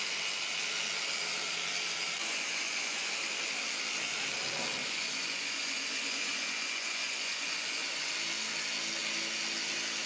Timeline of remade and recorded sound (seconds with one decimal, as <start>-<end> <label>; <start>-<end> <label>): 0.0-2.2 recorded; 2.2-3.1 remade; 3.1-4.8 recorded; 4.8-8.1 remade; 8.1-10.1 recorded